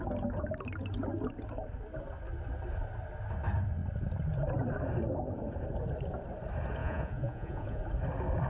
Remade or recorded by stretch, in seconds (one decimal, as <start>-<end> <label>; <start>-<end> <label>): 0.0-6.8 recorded; 6.8-7.8 remade; 7.8-8.5 recorded